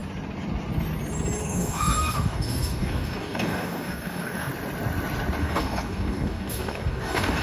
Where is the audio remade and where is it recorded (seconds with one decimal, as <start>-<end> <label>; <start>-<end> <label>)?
0.0-1.4 recorded; 1.4-4.5 remade; 4.5-5.4 recorded; 5.4-7.4 remade